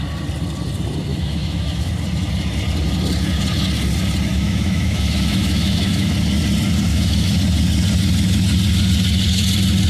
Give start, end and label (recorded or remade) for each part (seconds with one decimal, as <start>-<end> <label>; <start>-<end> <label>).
0.0-1.1 recorded; 1.1-1.9 remade; 1.9-4.3 recorded; 4.3-6.1 remade; 6.1-6.9 recorded; 6.9-7.4 remade; 7.4-9.9 recorded